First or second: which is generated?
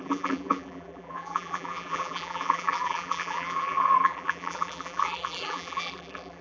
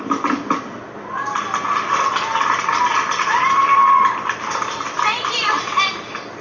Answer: first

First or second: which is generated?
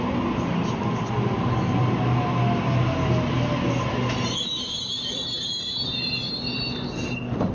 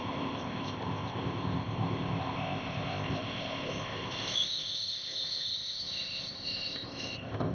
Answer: second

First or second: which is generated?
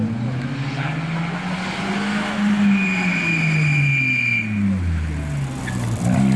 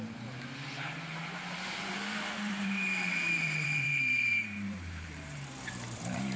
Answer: second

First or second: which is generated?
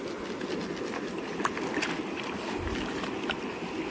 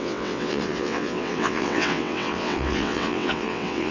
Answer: second